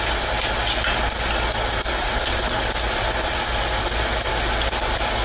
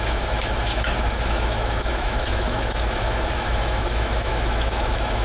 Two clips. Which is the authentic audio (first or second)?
first